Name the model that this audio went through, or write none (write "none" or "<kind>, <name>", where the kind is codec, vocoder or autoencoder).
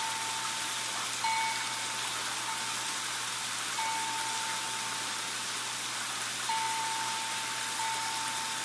none